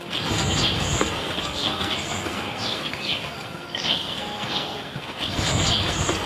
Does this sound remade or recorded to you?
remade